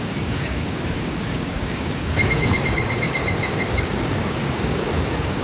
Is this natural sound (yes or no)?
no